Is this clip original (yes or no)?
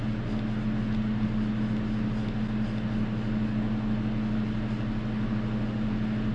yes